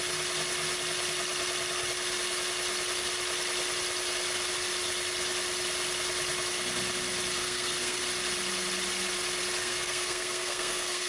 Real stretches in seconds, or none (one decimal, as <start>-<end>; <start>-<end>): 0.0-7.4; 8.0-9.6